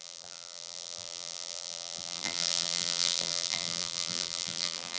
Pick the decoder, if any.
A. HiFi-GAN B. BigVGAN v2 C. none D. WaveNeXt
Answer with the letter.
B